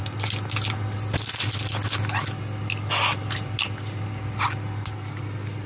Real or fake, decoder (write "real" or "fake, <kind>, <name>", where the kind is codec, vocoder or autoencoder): real